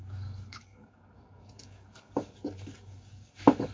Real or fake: fake